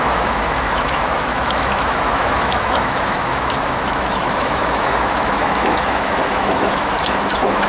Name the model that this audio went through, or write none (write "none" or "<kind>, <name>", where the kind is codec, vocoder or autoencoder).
autoencoder, DAC-VAE